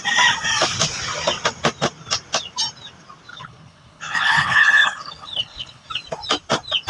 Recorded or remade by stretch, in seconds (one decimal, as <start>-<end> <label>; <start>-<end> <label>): 0.0-3.3 recorded; 3.3-5.9 remade; 5.9-6.9 recorded